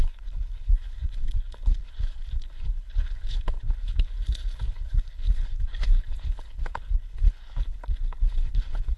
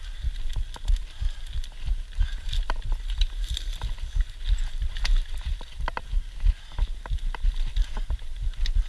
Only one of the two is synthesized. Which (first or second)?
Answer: first